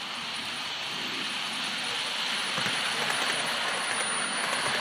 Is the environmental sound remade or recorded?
recorded